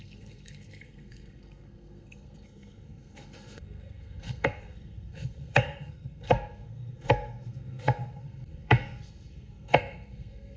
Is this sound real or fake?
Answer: fake